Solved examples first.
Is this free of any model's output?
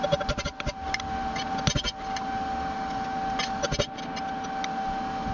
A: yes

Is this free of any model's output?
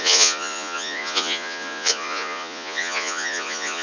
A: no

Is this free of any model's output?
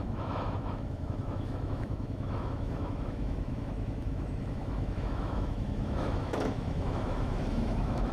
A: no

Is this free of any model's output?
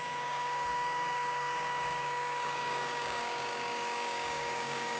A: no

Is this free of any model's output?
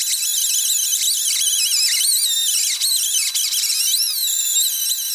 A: yes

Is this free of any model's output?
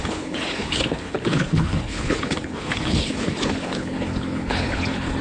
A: no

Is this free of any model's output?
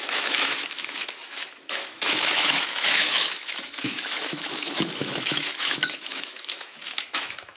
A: no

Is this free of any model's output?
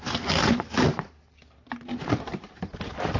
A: yes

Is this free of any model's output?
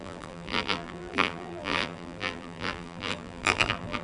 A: no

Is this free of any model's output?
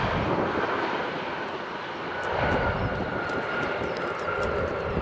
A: yes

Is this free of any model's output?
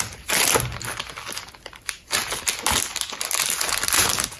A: yes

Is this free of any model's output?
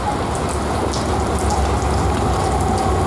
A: yes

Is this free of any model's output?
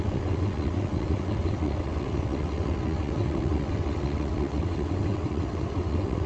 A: no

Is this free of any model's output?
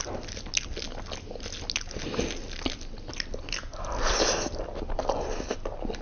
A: yes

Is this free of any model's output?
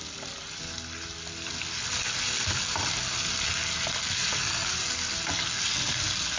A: yes